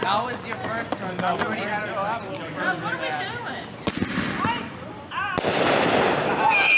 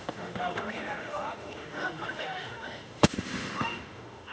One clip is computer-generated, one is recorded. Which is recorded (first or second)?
first